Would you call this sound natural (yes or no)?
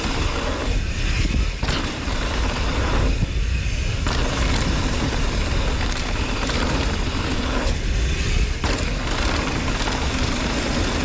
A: yes